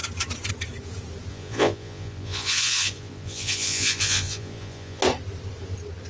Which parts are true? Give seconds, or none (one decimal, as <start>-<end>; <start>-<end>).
0.0-1.3; 5.0-6.1